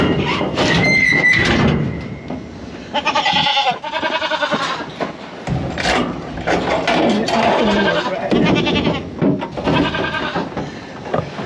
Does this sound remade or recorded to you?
recorded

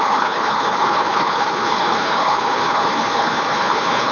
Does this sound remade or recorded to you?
remade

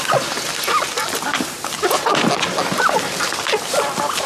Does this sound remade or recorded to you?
recorded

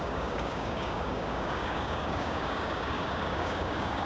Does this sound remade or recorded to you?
remade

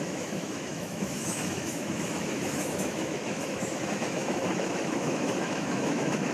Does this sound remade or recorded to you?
remade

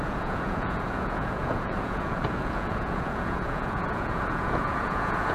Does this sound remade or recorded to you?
remade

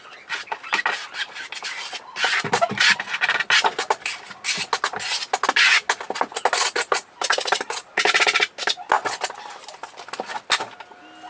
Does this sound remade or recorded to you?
recorded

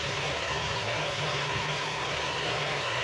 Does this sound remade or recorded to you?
remade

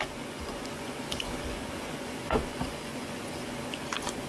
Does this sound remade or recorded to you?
remade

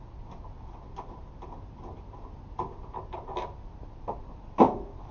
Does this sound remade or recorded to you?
recorded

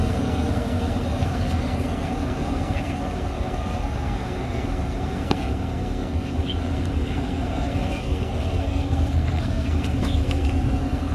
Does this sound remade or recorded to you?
remade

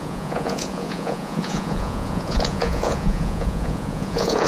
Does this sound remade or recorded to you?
remade